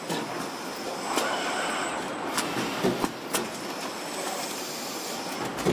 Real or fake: real